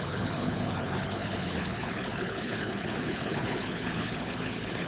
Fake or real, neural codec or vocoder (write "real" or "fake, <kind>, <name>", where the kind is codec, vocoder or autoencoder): fake, codec, HILCodec